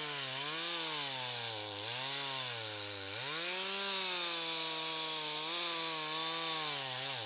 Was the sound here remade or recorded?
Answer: recorded